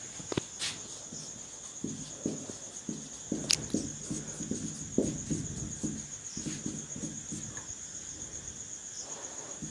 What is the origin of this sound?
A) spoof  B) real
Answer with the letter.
B